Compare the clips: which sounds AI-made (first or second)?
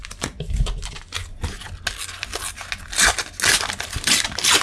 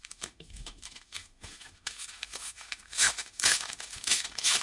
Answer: second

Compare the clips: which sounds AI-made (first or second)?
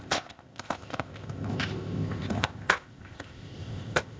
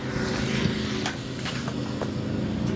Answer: first